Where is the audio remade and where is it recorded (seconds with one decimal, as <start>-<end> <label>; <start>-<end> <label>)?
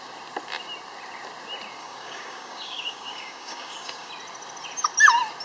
0.0-1.8 recorded; 1.8-4.1 remade; 4.1-5.4 recorded